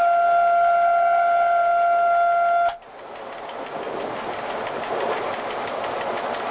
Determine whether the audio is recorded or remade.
recorded